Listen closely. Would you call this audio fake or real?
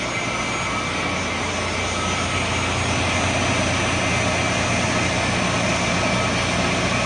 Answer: real